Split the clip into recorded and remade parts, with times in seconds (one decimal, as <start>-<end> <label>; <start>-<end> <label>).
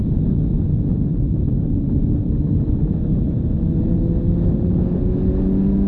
0.0-1.1 recorded; 1.1-4.6 remade; 4.6-5.9 recorded